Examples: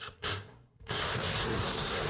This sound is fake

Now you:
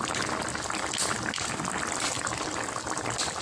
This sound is real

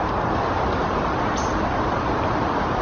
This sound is real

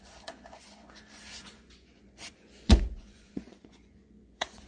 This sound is fake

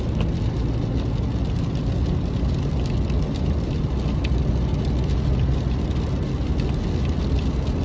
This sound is real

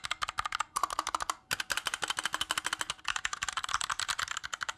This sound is real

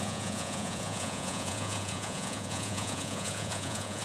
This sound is fake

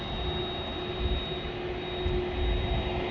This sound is real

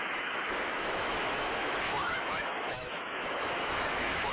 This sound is fake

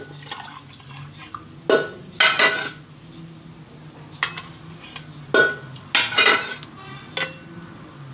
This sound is real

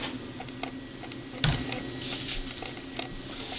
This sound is real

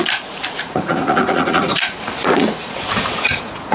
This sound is fake